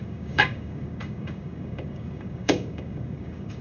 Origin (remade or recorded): remade